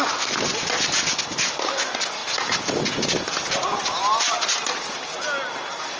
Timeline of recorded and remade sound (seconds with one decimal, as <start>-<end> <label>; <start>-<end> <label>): 0.0-6.0 recorded